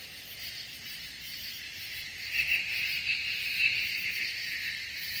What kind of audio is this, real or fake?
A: real